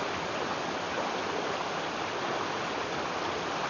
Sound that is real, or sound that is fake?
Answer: real